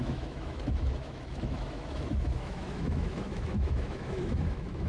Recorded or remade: remade